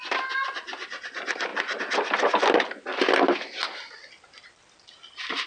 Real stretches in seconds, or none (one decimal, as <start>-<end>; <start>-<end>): 0.0-5.5